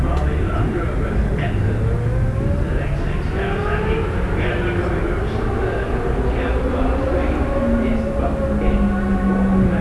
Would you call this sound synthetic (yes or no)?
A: no